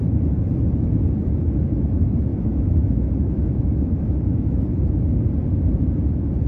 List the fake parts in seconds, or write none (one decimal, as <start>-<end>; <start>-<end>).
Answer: 2.3-4.6